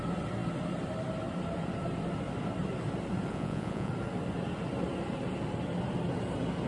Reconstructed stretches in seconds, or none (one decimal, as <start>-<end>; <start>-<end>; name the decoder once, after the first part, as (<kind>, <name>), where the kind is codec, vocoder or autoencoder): 3.3-3.9 (vocoder, Vocos)